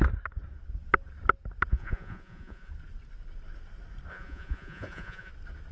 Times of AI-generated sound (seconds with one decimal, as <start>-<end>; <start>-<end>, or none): 1.7-2.7; 4.1-5.3